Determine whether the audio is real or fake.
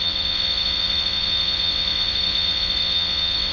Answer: fake